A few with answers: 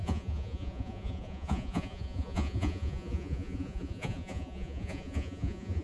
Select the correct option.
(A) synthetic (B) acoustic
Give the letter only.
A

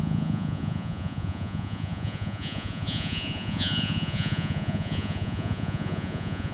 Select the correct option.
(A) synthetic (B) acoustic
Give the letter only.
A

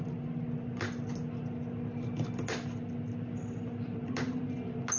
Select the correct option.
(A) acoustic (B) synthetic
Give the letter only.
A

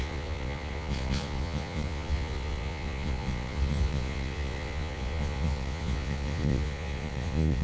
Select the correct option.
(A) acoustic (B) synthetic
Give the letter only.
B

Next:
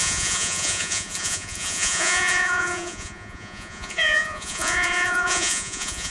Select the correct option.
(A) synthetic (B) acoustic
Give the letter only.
A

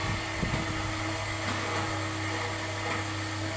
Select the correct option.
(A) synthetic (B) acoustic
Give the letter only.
B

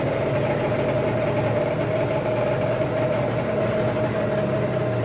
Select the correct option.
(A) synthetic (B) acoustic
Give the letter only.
B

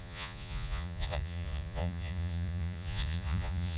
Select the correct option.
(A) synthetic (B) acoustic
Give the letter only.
A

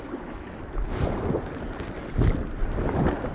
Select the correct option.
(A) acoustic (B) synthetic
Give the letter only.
A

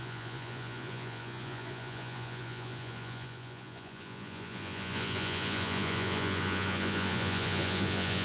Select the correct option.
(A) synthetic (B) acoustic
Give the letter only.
A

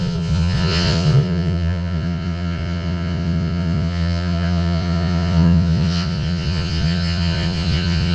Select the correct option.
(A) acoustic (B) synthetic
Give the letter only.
B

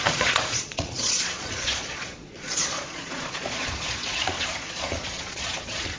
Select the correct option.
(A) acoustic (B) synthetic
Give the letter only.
B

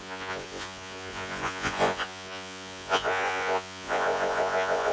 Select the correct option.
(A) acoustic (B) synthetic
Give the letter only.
B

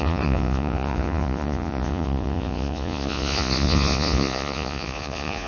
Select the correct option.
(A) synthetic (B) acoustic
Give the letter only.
A